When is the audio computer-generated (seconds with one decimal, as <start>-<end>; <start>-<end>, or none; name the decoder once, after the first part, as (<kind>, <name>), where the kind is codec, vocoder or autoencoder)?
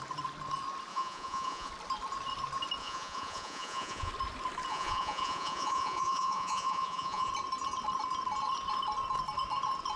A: 0.9-1.7 (vocoder, Vocos); 2.8-4.1; 4.7-7.3